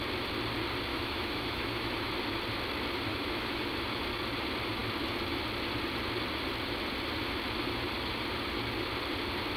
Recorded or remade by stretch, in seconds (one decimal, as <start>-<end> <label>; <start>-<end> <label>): 0.0-0.9 recorded; 0.9-2.1 remade; 2.1-3.1 recorded; 3.1-3.6 remade; 3.6-9.6 recorded